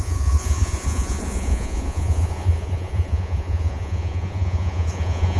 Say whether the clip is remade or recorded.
remade